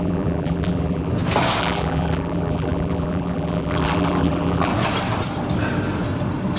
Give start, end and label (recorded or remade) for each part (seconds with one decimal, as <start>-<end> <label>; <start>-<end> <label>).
0.0-1.1 remade; 1.1-1.6 recorded; 1.6-4.7 remade; 4.7-6.6 recorded